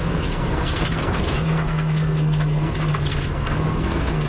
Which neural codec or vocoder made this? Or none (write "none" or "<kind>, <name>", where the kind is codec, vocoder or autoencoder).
codec, SNAC